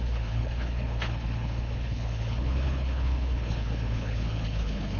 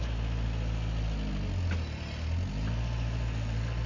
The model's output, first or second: first